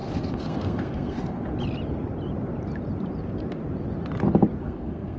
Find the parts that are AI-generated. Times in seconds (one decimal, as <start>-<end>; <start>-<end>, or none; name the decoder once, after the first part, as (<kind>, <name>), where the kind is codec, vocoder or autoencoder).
0.0-1.5 (codec, SNAC); 4.6-5.2